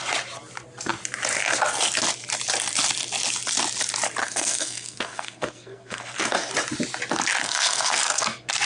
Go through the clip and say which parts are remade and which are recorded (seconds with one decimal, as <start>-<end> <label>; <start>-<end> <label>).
0.0-4.2 recorded; 4.2-6.5 remade; 6.5-7.4 recorded; 7.4-8.2 remade; 8.2-8.6 recorded